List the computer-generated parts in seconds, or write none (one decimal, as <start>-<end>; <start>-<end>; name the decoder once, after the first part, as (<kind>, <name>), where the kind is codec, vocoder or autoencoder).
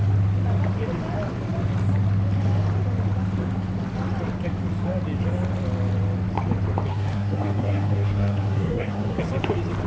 6.9-9.2 (codec, SNAC)